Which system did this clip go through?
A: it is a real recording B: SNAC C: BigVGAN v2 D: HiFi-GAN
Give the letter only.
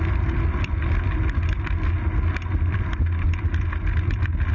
A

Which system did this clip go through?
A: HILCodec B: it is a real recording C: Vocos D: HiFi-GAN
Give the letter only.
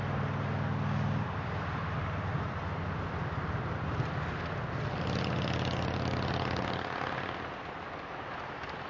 B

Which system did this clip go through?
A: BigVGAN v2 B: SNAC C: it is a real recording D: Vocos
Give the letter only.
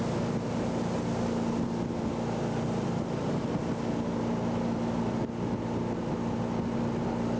C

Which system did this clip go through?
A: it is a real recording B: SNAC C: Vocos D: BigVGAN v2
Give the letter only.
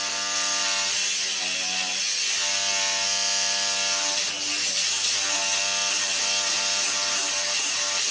A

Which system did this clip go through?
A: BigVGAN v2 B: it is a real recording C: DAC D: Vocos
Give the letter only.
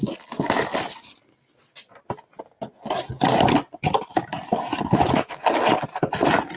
B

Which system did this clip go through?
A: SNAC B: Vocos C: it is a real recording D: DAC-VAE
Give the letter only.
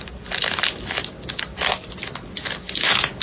C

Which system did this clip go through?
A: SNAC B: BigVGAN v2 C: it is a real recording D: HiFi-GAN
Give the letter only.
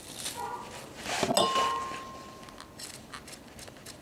C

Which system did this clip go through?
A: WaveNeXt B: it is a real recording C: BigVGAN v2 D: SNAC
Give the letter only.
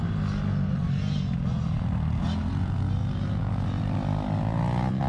B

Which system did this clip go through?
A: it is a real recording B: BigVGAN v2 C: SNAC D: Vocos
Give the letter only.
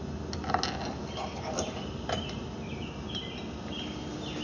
A